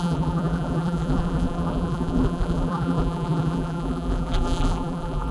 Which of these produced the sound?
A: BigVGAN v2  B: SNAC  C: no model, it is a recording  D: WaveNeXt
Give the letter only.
A